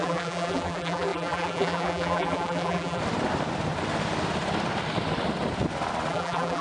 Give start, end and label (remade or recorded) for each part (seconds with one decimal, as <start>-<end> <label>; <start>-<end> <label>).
0.0-3.0 remade; 3.0-6.1 recorded; 6.1-6.6 remade